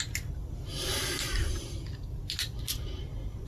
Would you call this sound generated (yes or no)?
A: no